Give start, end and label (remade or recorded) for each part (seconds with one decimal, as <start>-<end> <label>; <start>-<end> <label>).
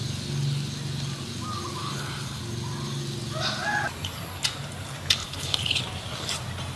0.0-1.8 recorded; 1.8-2.4 remade; 2.4-5.2 recorded; 5.2-5.8 remade; 5.8-6.8 recorded